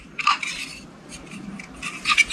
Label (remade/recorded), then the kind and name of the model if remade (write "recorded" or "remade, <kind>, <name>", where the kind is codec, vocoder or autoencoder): recorded